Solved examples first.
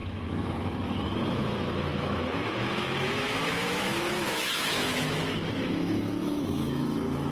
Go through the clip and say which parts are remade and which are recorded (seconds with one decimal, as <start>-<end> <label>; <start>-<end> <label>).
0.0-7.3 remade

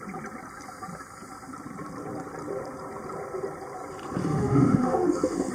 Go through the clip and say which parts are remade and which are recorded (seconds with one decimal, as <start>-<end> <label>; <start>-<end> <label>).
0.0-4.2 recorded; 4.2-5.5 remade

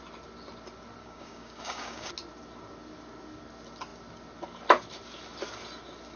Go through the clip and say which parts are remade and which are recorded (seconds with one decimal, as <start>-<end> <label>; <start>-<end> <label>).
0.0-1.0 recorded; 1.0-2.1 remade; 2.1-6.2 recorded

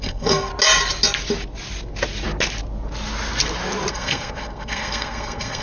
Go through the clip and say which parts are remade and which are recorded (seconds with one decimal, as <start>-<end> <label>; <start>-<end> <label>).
0.0-0.5 remade; 0.5-3.9 recorded; 3.9-5.6 remade

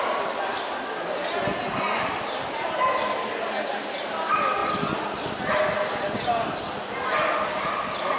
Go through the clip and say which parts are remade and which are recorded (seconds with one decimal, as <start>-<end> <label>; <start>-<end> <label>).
0.0-8.2 recorded

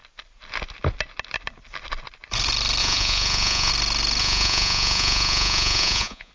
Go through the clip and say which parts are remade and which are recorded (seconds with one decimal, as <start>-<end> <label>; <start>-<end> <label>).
0.0-2.8 recorded; 2.8-3.7 remade; 3.7-4.2 recorded; 4.2-6.3 remade